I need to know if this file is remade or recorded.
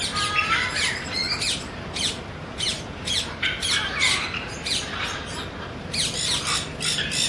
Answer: remade